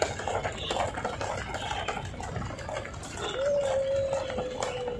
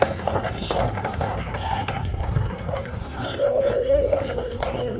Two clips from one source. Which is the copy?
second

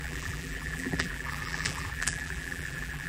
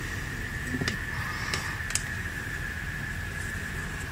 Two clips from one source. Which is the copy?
first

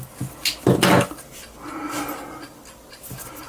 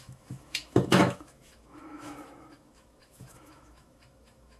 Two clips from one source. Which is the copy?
second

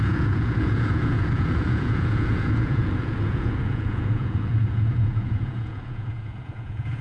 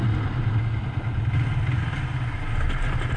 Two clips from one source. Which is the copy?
first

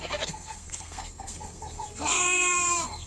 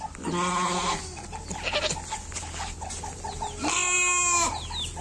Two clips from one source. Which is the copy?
first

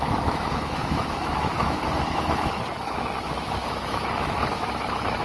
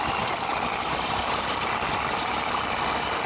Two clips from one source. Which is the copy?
first